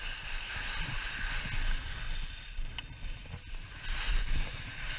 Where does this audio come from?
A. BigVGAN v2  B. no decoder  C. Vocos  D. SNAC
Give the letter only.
B